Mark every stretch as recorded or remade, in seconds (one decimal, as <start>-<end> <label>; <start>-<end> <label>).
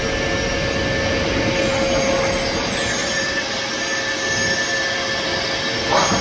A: 0.0-3.0 recorded; 3.0-3.6 remade; 3.6-6.2 recorded